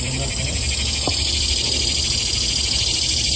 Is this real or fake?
real